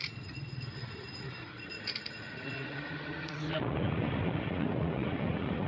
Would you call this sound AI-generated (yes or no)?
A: yes